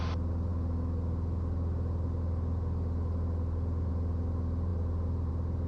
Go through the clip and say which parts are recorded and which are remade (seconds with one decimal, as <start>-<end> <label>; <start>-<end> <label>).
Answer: 0.0-5.7 recorded